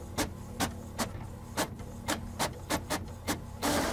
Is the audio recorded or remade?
recorded